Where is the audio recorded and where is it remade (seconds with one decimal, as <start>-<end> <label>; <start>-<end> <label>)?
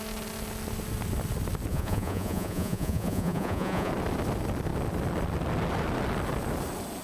0.0-1.7 recorded; 1.7-3.9 remade; 3.9-7.0 recorded